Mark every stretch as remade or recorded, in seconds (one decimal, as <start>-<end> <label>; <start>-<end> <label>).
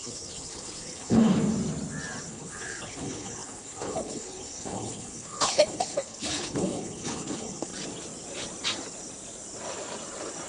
0.0-1.4 remade; 1.4-2.3 recorded; 2.3-7.7 remade; 7.7-10.5 recorded